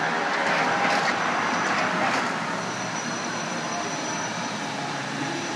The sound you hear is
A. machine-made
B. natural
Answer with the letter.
A